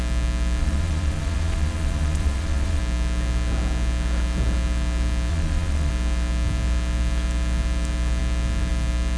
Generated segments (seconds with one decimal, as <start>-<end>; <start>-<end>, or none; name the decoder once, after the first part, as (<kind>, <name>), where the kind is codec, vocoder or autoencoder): 0.6-2.8 (vocoder, Vocos); 5.3-5.9